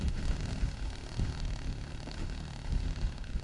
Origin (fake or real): fake